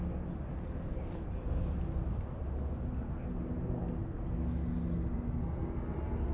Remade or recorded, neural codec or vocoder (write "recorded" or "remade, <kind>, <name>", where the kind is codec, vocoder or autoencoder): recorded